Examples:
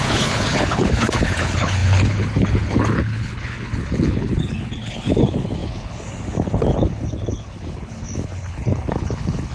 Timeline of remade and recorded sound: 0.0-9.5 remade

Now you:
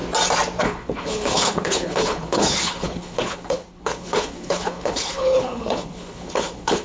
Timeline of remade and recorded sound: 0.0-0.6 recorded; 0.6-6.8 remade

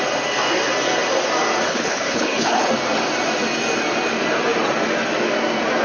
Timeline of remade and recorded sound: 0.0-1.7 recorded; 1.7-2.7 remade; 2.7-5.8 recorded

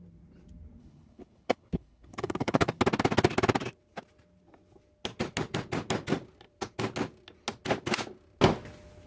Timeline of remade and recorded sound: 0.0-0.8 recorded; 0.8-2.8 remade; 2.8-9.1 recorded

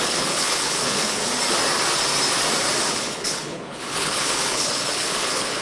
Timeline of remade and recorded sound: 0.0-1.2 remade; 1.2-2.9 recorded; 2.9-5.6 remade

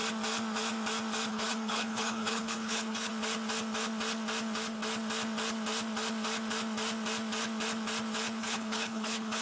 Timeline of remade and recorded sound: 0.0-1.3 recorded; 1.3-3.1 remade; 3.1-8.4 recorded; 8.4-9.4 remade